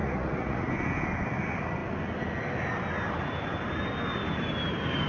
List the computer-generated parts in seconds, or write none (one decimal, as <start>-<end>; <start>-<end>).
0.0-0.7